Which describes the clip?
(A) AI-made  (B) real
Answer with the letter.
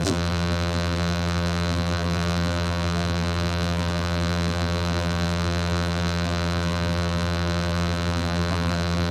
A